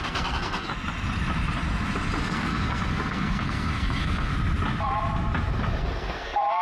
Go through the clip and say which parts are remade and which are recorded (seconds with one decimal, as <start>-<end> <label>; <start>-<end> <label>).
0.0-0.7 remade; 0.7-2.2 recorded; 2.2-4.3 remade; 4.3-5.8 recorded; 5.8-6.6 remade